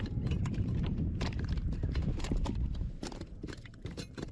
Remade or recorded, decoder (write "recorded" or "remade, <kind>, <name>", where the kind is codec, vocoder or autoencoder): remade, vocoder, BigVGAN v2